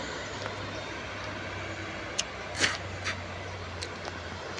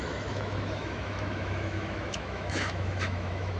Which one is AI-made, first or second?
second